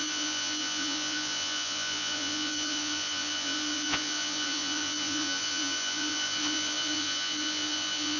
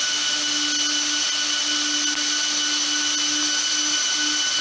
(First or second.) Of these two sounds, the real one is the second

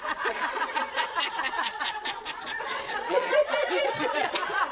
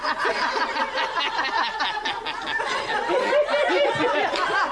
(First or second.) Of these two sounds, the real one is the second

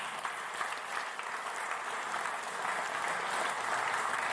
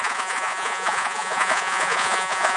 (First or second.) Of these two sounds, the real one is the first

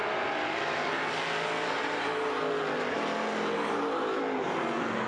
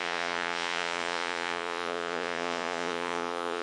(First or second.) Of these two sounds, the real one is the first